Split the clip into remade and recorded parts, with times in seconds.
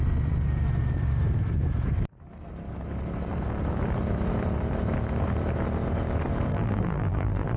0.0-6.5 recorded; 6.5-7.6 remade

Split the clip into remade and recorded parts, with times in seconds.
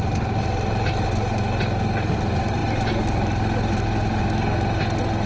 0.0-5.3 recorded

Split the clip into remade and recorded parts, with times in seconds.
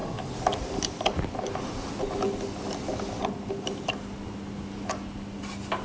0.0-5.8 recorded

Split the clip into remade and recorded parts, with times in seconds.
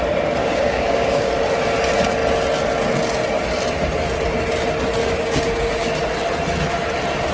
0.0-0.4 recorded; 0.4-1.3 remade; 1.3-5.0 recorded; 5.0-5.9 remade; 5.9-7.3 recorded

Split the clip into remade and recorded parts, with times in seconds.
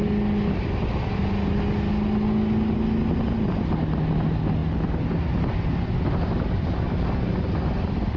0.0-8.2 recorded